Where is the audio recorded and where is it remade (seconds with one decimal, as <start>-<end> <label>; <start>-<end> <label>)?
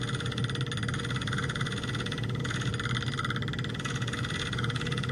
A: 0.0-0.4 remade; 0.4-1.0 recorded; 1.0-2.7 remade; 2.7-3.7 recorded; 3.7-5.1 remade